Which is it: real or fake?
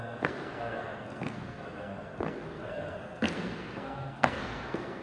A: fake